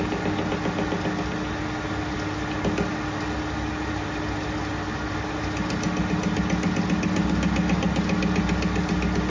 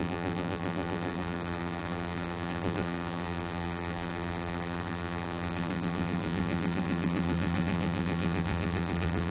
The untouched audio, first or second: first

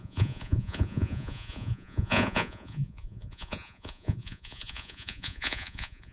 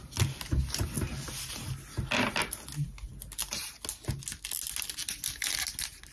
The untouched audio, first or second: second